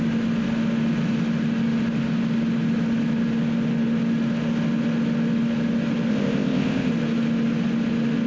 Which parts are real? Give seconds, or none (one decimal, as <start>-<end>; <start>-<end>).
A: 0.0-6.1; 6.9-8.3

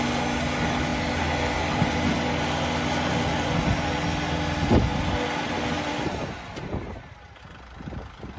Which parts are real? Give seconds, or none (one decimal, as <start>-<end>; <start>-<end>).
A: 0.0-8.4

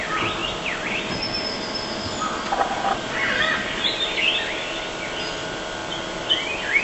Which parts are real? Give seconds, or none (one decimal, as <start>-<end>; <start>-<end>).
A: 0.0-6.8

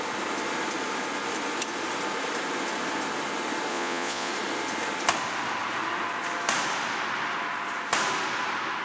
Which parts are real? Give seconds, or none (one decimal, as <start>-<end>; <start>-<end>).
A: 0.0-3.7; 4.3-8.8

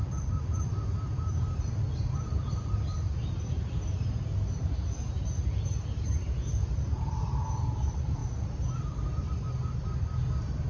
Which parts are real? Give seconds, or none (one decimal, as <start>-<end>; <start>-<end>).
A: 8.2-10.7

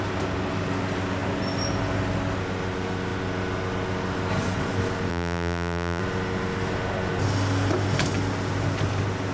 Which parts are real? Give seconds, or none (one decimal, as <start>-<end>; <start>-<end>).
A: 0.0-5.1; 6.0-9.3

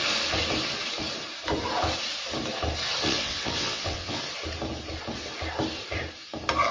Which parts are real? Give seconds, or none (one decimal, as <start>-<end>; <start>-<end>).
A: 0.0-3.0; 4.2-6.7